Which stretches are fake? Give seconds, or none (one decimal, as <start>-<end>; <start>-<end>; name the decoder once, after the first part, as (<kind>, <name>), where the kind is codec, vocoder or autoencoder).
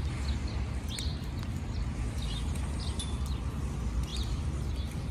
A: none